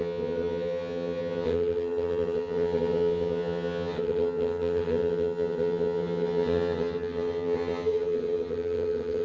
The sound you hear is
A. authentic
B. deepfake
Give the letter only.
B